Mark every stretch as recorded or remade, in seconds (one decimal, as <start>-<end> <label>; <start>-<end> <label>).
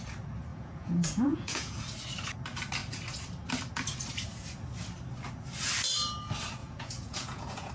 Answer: 0.0-0.5 recorded; 0.5-1.8 remade; 1.8-6.6 recorded; 6.6-7.7 remade